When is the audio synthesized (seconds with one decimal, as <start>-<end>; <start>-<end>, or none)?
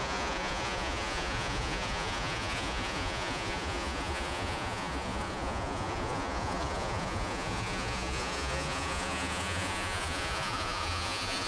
0.0-11.5